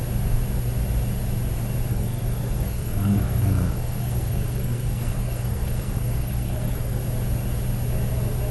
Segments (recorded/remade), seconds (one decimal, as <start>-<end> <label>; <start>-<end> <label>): 0.0-1.9 recorded; 1.9-7.0 remade; 7.0-8.5 recorded